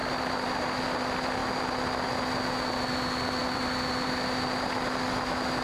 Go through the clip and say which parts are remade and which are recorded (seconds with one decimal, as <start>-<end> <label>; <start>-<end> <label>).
0.0-0.8 remade; 0.8-1.4 recorded; 1.4-2.1 remade; 2.1-3.4 recorded; 3.4-4.7 remade; 4.7-5.6 recorded